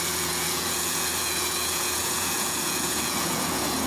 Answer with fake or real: fake